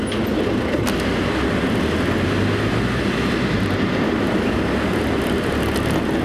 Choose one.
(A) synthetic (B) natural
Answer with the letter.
B